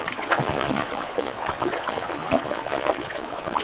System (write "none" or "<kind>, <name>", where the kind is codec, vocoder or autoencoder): vocoder, Vocos